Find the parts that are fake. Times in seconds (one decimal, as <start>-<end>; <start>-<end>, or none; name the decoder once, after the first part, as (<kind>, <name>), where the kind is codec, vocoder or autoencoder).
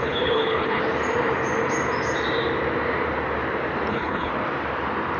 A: 0.0-0.8 (codec, HILCodec); 3.9-4.3